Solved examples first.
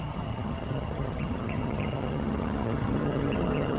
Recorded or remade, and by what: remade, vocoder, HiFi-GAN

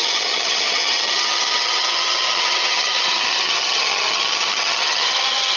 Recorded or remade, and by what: remade, vocoder, HiFi-GAN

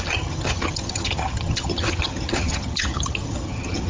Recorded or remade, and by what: remade, vocoder, HiFi-GAN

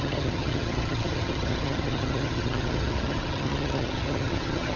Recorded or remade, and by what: remade, vocoder, HiFi-GAN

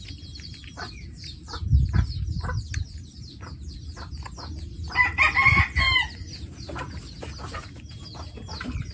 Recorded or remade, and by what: recorded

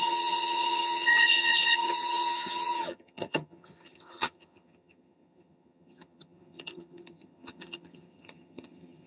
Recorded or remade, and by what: remade, vocoder, HiFi-GAN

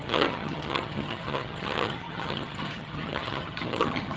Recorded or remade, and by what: remade, vocoder, HiFi-GAN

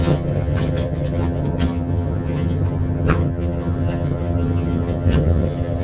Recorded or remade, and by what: remade, vocoder, HiFi-GAN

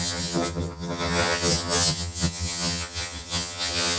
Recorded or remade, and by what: remade, vocoder, HiFi-GAN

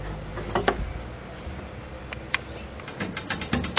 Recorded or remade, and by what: recorded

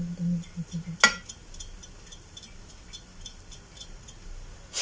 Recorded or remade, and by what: recorded